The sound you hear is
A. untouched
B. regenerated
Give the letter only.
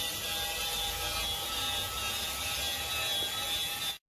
A